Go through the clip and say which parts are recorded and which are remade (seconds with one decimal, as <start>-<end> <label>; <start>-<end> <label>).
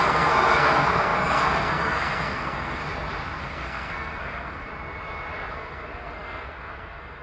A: 0.0-2.8 remade; 2.8-3.4 recorded; 3.4-4.7 remade; 4.7-5.5 recorded; 5.5-7.2 remade